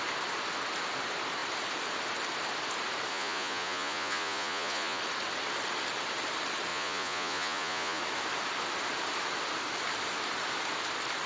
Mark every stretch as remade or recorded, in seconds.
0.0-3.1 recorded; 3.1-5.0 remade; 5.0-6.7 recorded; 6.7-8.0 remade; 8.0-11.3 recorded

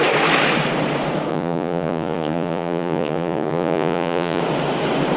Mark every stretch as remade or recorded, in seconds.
0.0-1.3 recorded; 1.3-4.4 remade; 4.4-5.2 recorded

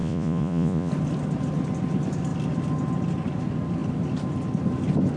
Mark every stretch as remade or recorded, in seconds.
0.0-0.9 remade; 0.9-5.2 recorded